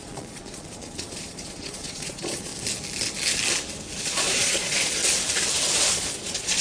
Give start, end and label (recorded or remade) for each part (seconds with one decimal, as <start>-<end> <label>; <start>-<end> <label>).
0.0-2.5 remade; 2.5-4.0 recorded; 4.0-5.0 remade; 5.0-5.8 recorded; 5.8-6.6 remade